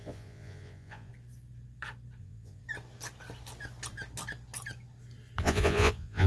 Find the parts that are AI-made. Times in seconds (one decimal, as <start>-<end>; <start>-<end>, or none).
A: 0.0-1.1; 2.2-2.6; 5.4-6.3